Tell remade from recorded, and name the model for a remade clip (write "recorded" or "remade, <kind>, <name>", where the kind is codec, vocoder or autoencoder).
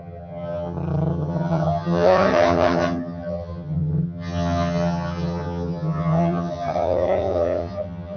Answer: remade, vocoder, HiFi-GAN